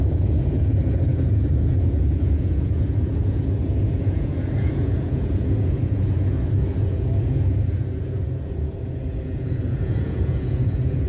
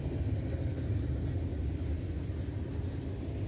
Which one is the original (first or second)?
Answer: second